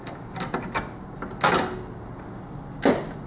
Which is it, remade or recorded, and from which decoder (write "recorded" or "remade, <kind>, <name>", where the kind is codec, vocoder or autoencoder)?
recorded